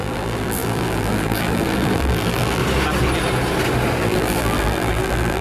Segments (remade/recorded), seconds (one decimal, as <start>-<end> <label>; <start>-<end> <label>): 0.0-2.6 remade; 2.6-4.0 recorded; 4.0-5.4 remade